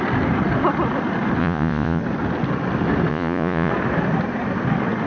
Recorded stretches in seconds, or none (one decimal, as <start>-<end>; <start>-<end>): 0.0-1.4; 2.0-3.1; 3.7-5.1